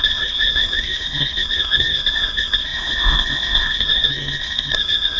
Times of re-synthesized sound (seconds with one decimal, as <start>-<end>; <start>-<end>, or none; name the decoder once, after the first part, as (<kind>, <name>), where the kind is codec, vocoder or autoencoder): 0.0-5.2 (codec, SNAC)